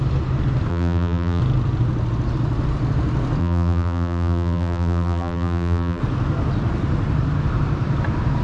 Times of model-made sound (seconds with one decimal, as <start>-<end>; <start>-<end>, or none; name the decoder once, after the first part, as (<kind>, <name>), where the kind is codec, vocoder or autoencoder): 0.7-1.4 (vocoder, BigVGAN v2); 3.4-6.0